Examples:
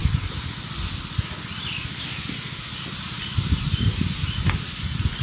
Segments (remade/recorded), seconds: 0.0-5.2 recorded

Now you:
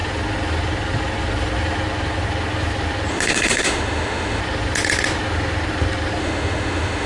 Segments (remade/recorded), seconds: 0.0-3.1 recorded; 3.1-4.4 remade; 4.4-6.2 recorded; 6.2-7.1 remade

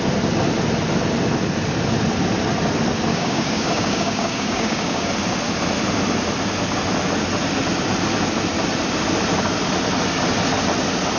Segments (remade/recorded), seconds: 0.0-3.1 recorded; 3.1-5.1 remade; 5.1-11.2 recorded

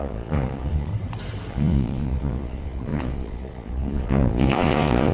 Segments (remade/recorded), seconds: 0.0-0.9 remade; 0.9-1.5 recorded; 1.5-5.1 remade

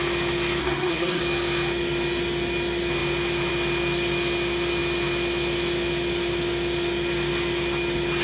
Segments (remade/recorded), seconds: 0.0-0.6 recorded; 0.6-1.2 remade; 1.2-8.2 recorded

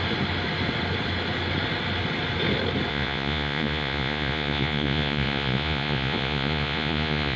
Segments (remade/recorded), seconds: 0.0-2.9 recorded; 2.9-7.4 remade

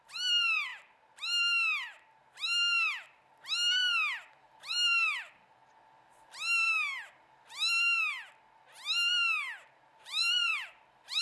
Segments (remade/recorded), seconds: 0.0-0.7 remade; 0.7-4.3 recorded; 4.3-5.6 remade; 5.6-9.9 recorded; 9.9-11.2 remade

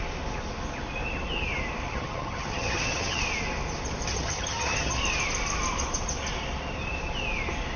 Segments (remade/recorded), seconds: 0.0-1.9 recorded; 1.9-3.2 remade; 3.2-4.1 recorded; 4.1-5.0 remade; 5.0-7.8 recorded